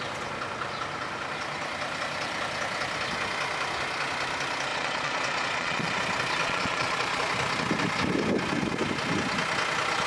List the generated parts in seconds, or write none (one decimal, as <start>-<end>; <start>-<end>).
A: 4.7-6.0; 6.4-7.2